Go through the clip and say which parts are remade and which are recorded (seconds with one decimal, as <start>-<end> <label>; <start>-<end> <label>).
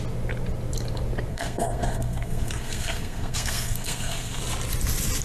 0.0-1.3 recorded; 1.3-4.4 remade; 4.4-5.2 recorded